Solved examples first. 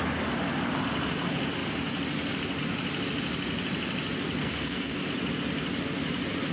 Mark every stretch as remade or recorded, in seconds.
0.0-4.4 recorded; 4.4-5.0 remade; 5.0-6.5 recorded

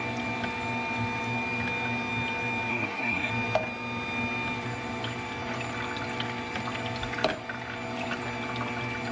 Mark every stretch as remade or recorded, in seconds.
0.0-2.7 recorded; 2.7-3.3 remade; 3.3-9.1 recorded

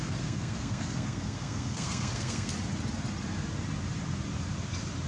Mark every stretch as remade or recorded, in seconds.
0.0-2.5 remade; 2.5-5.1 recorded

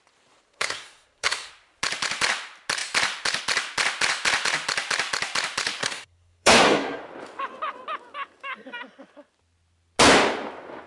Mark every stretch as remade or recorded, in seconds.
0.0-0.5 recorded; 0.5-1.5 remade; 1.5-5.8 recorded; 5.8-7.0 remade; 7.0-10.9 recorded